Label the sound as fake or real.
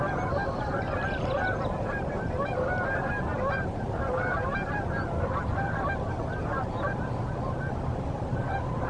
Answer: fake